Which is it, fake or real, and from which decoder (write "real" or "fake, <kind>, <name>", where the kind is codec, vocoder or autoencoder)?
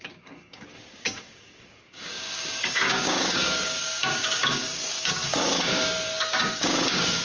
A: fake, codec, DAC